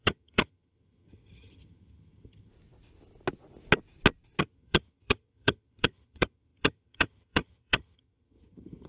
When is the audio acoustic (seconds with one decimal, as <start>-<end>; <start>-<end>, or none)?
2.5-4.4